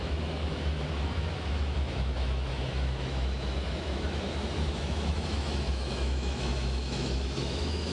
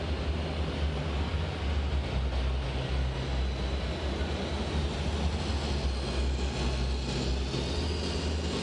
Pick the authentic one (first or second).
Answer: second